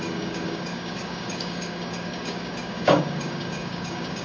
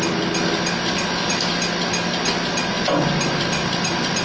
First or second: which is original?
second